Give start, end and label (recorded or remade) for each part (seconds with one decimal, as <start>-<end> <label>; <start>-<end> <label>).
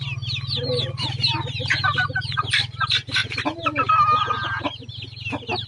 0.0-5.7 recorded